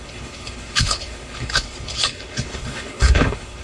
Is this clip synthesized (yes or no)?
yes